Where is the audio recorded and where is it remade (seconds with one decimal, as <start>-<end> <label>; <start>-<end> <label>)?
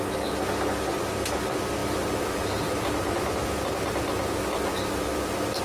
0.0-1.8 recorded; 1.8-5.6 remade